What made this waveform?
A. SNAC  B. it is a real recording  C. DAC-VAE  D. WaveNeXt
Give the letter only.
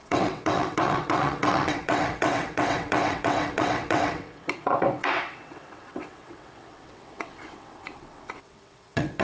D